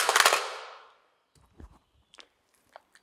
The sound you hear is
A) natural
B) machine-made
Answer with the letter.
A